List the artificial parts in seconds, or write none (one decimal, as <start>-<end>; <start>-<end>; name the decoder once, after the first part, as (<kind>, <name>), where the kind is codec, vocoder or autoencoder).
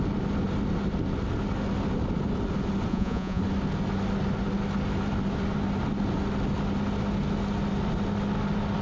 2.9-3.4 (vocoder, Vocos)